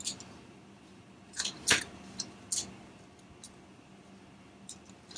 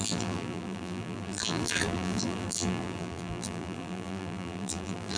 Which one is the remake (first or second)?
second